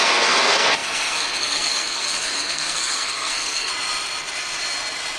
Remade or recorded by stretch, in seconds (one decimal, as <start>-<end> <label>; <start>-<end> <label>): 0.0-3.7 remade; 3.7-5.2 recorded